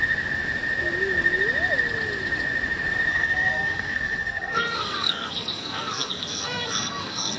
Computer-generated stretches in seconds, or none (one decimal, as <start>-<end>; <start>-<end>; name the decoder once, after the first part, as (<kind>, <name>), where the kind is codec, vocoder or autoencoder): 3.1-7.4 (codec, SNAC)